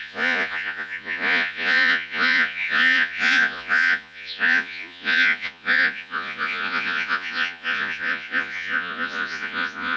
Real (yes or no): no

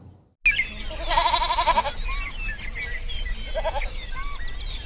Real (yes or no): yes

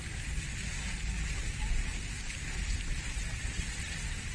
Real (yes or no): yes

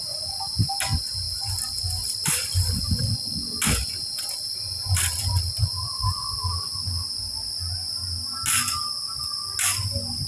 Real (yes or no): yes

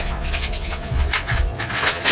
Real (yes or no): no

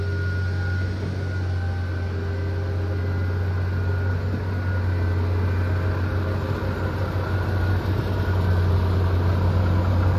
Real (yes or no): yes